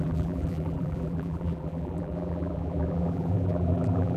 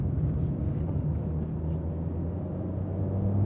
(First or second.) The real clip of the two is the second